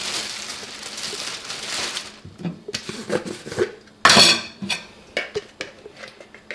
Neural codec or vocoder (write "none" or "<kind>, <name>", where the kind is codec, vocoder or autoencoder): none